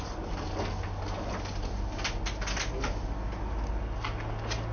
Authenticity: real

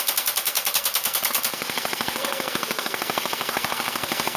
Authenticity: fake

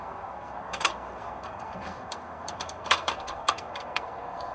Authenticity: fake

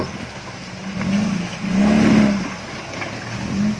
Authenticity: real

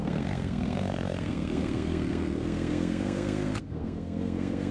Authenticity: fake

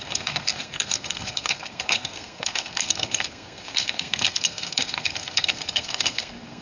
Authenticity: fake